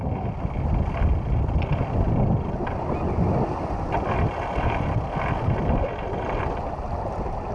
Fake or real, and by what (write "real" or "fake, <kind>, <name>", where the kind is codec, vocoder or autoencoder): real